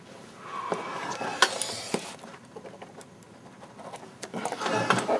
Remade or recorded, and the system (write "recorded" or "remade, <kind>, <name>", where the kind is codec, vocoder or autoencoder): recorded